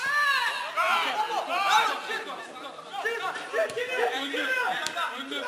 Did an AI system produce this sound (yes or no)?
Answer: no